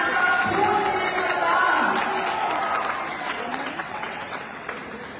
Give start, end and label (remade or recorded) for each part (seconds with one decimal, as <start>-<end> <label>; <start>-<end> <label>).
0.0-3.1 recorded; 3.1-4.7 remade; 4.7-5.2 recorded